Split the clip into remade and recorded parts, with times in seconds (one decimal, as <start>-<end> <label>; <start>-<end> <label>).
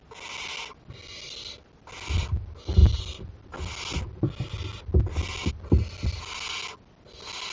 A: 0.0-7.5 recorded